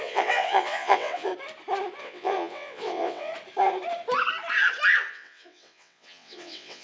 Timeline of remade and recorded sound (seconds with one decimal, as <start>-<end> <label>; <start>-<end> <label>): 0.0-1.3 remade; 1.3-2.0 recorded; 2.0-3.3 remade; 3.3-5.1 recorded; 5.1-6.8 remade